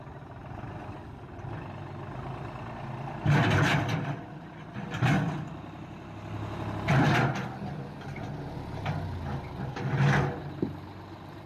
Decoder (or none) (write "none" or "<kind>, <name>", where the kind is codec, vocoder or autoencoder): none